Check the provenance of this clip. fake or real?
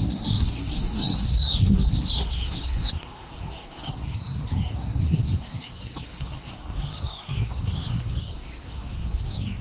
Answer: fake